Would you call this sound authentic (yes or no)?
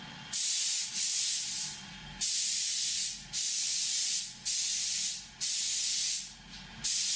yes